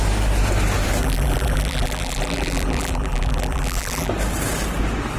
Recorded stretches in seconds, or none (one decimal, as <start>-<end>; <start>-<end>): 0.0-1.0; 4.1-5.2

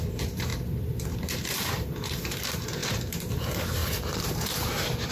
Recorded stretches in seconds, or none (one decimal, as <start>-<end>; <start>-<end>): none

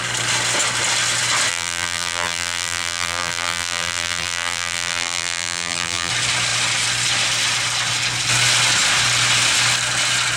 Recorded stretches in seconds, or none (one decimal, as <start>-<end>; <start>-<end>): 0.0-1.5; 6.1-10.4